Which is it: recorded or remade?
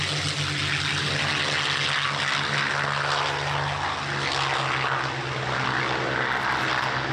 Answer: recorded